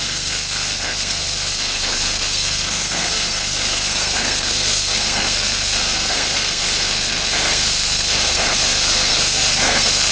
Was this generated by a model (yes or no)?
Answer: yes